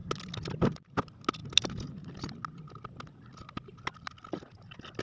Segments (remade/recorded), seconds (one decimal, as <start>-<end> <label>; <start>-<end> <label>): 0.0-5.0 recorded